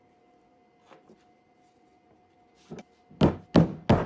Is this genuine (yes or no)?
yes